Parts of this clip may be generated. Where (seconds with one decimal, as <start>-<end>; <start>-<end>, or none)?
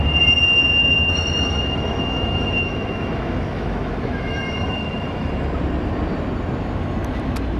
0.8-5.3